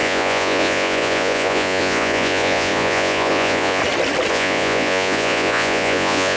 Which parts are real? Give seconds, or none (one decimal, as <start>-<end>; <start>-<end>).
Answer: 3.8-4.3